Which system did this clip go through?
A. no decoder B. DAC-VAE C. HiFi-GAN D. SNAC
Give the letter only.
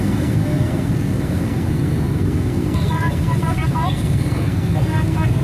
D